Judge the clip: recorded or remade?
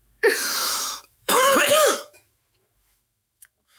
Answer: remade